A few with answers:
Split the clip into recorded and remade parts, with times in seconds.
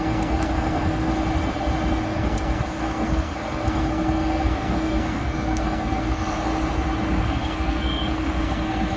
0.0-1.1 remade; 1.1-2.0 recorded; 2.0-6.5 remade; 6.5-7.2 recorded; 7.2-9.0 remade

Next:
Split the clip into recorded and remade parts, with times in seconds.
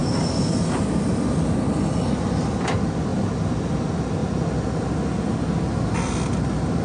0.0-6.8 recorded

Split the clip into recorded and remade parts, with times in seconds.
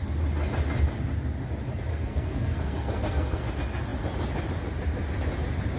0.0-1.9 recorded; 1.9-3.5 remade; 3.5-5.8 recorded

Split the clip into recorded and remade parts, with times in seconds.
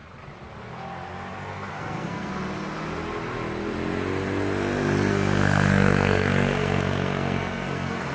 0.0-1.7 recorded; 1.7-2.3 remade; 2.3-5.1 recorded; 5.1-8.1 remade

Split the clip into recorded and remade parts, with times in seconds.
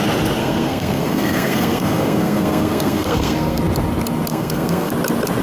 0.0-0.4 recorded; 0.4-3.6 remade; 3.6-4.3 recorded; 4.3-4.9 remade; 4.9-5.4 recorded